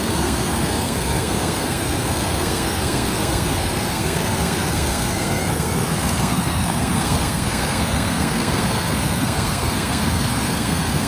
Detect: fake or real fake